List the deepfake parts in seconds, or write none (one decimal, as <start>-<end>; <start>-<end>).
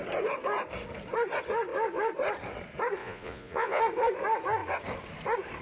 3.0-3.8